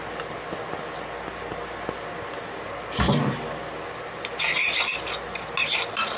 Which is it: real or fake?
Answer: real